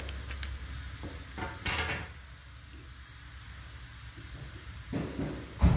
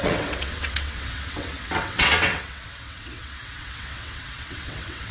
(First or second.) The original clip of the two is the first